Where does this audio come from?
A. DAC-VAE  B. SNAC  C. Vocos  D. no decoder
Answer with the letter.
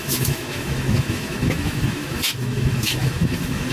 A